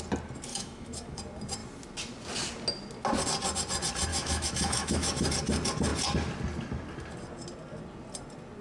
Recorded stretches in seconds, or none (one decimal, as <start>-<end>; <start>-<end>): 0.0-0.5; 1.2-4.1; 5.3-8.6